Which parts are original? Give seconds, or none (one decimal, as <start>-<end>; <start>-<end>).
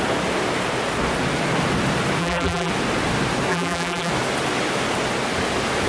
0.0-2.2; 2.7-3.5; 4.1-5.9